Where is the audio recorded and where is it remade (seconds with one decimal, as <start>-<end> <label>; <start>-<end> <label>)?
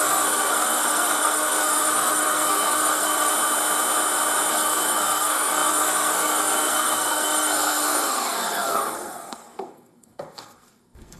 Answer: 0.0-3.3 remade; 3.3-4.5 recorded; 4.5-11.2 remade